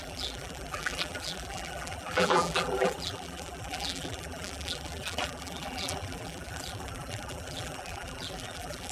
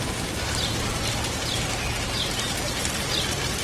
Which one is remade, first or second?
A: first